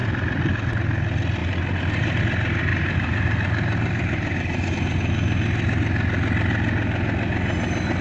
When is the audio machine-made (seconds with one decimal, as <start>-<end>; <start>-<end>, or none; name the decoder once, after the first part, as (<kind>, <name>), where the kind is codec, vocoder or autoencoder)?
1.4-2.2 (vocoder, BigVGAN v2); 2.7-4.7